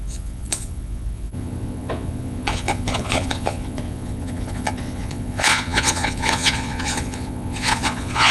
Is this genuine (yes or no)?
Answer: no